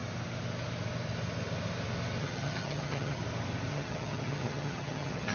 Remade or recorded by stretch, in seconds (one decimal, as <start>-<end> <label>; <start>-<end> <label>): 0.0-2.2 recorded; 2.2-3.2 remade; 3.2-3.7 recorded; 3.7-5.3 remade